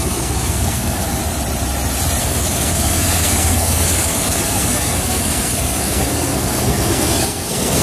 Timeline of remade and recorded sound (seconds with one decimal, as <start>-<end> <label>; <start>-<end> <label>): 0.0-1.2 remade; 1.2-2.2 recorded; 2.2-7.8 remade